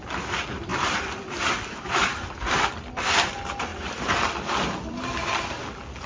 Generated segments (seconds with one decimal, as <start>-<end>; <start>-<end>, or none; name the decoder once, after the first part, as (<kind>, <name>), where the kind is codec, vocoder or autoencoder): none

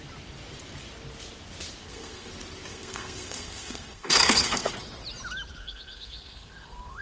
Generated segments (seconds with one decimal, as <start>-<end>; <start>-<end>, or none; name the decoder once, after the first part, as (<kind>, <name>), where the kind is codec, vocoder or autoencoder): 1.8-2.3 (codec, SNAC); 2.7-4.7; 5.6-7.0

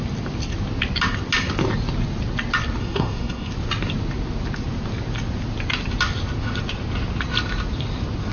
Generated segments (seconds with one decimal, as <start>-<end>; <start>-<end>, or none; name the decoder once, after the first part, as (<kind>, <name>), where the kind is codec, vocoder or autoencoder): 2.8-3.5 (codec, SNAC)

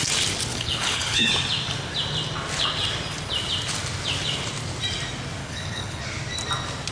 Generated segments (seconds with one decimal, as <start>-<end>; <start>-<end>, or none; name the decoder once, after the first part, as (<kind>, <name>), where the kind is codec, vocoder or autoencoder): 0.5-1.3 (codec, HILCodec); 5.4-6.0

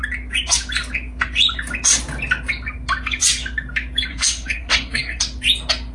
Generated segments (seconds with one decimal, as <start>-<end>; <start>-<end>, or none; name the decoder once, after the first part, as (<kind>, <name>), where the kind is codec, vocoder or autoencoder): 4.1-5.2 (codec, SNAC)

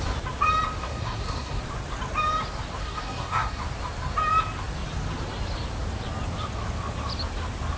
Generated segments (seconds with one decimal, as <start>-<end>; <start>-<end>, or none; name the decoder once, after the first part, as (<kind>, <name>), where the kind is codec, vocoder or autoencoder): 0.8-1.6 (codec, SNAC); 2.8-3.6